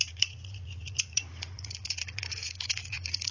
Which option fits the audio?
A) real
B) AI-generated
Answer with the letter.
B